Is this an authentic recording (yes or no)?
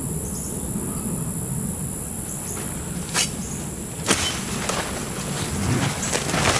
yes